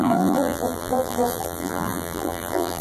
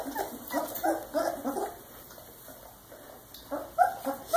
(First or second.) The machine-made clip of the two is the first